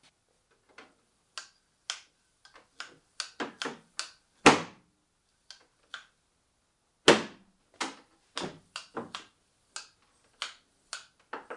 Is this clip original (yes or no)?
yes